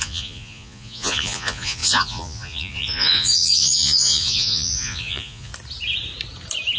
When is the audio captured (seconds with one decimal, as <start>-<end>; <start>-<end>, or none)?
5.5-6.8